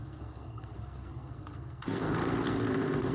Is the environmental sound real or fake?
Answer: fake